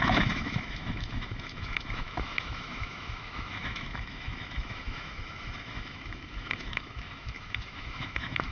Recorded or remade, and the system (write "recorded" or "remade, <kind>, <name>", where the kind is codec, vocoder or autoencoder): remade, autoencoder, DAC-VAE